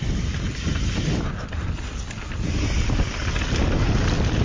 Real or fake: real